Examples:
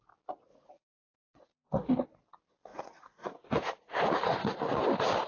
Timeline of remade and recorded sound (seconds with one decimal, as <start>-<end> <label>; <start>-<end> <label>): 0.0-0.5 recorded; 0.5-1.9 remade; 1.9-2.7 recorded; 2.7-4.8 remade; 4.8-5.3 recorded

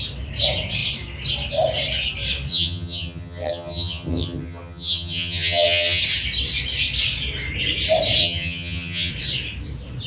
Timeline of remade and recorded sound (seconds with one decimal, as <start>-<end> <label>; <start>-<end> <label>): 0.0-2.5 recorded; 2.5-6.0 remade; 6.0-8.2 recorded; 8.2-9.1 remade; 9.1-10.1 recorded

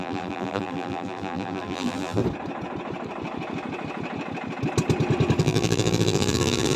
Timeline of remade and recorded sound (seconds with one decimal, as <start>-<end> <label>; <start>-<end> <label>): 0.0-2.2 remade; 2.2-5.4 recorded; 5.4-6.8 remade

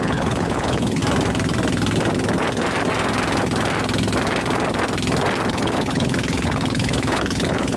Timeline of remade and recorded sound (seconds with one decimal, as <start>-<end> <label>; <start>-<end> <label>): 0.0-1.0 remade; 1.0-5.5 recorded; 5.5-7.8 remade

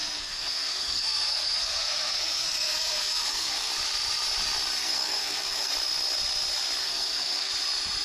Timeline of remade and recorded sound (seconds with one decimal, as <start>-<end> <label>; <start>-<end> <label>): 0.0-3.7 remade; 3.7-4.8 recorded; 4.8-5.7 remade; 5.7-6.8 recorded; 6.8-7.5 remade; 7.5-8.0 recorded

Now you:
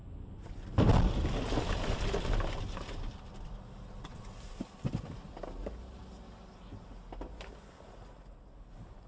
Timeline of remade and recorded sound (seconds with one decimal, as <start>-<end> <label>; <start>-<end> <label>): 0.0-9.1 recorded

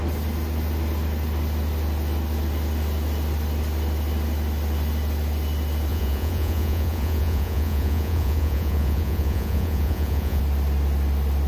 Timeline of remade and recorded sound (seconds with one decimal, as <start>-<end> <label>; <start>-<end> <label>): 0.0-5.9 recorded; 5.9-10.4 remade; 10.4-11.5 recorded